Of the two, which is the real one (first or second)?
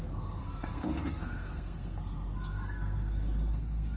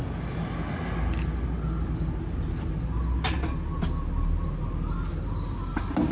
second